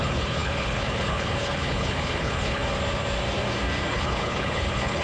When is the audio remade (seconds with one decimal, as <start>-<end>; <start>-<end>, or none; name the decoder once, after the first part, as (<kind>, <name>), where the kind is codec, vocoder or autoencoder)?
0.0-2.6 (codec, HILCodec); 3.9-5.0